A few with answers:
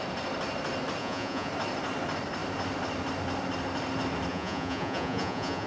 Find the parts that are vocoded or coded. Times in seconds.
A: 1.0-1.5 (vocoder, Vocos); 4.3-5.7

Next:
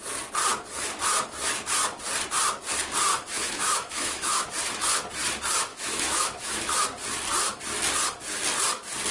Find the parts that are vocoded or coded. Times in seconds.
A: 3.1-4.5 (autoencoder, DAC-VAE); 5.7-6.6

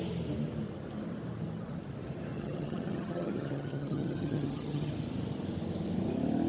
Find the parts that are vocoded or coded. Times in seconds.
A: 2.3-4.9 (vocoder, HiFi-GAN)

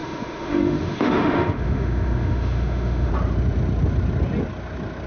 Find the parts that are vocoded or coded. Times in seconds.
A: 0.0-3.1 (autoencoder, DAC-VAE)

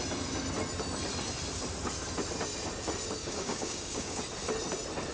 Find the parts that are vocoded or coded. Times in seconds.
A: 3.2-4.2 (codec, DAC)

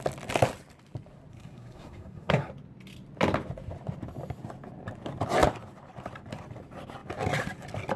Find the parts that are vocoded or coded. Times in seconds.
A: 1.3-2.5 (codec, SNAC)